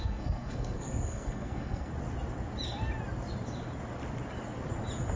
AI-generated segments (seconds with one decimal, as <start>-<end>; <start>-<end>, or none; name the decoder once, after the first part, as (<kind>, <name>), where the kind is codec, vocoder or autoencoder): 0.0-1.9 (codec, SNAC)